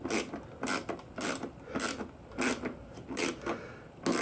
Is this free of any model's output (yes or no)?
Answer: yes